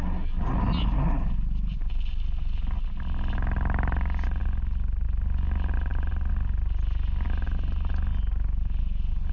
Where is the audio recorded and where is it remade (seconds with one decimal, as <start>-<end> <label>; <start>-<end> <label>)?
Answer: 0.0-9.3 recorded

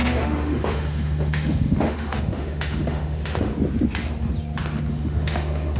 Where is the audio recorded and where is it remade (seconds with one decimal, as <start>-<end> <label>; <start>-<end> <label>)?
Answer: 0.0-3.5 remade; 3.5-4.9 recorded; 4.9-5.8 remade

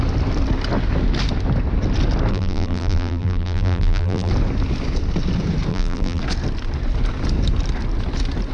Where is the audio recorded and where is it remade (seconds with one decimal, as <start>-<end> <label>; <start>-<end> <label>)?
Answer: 0.0-2.3 recorded; 2.3-4.3 remade; 4.3-5.7 recorded; 5.7-6.2 remade; 6.2-8.5 recorded

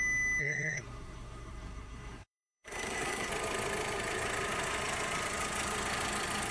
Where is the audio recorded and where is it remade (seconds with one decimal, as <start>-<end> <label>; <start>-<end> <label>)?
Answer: 0.0-0.4 recorded; 0.4-3.3 remade; 3.3-6.5 recorded

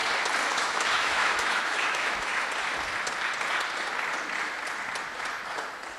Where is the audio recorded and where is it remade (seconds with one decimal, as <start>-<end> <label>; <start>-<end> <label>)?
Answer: 0.0-0.5 recorded; 0.5-2.3 remade; 2.3-6.0 recorded